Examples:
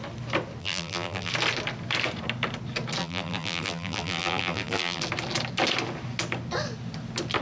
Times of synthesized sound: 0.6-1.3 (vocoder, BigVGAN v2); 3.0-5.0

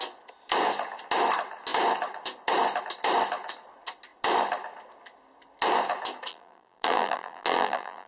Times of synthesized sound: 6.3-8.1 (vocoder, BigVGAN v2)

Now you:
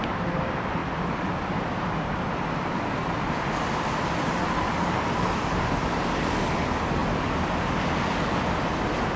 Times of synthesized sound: none

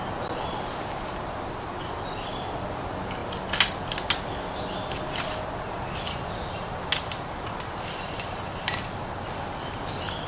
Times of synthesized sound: none